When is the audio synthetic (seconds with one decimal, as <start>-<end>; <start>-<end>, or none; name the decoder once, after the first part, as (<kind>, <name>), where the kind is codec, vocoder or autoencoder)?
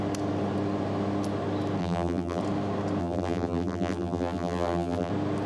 1.8-2.4 (vocoder, BigVGAN v2); 3.0-5.1